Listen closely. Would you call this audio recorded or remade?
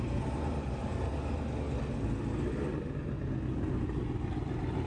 recorded